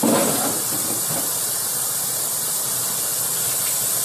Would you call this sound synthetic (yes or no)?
yes